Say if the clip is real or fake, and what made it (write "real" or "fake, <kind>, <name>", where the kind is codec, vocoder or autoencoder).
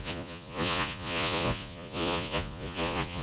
fake, vocoder, Vocos